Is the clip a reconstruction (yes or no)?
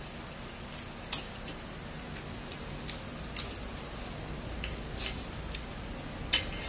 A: no